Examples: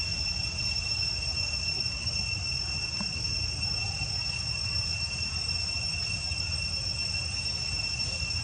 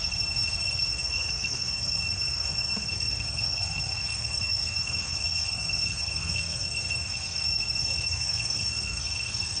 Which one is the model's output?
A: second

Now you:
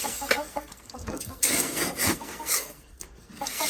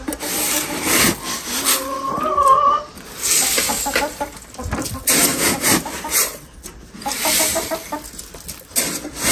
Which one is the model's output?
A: first